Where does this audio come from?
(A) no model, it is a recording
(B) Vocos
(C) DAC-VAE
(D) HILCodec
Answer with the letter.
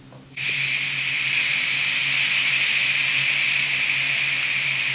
A